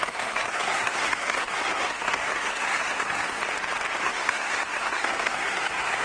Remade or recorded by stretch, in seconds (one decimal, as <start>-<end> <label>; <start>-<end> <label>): 0.0-3.4 remade; 3.4-4.0 recorded; 4.0-6.0 remade